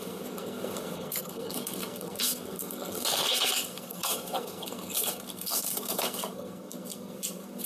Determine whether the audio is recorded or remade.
remade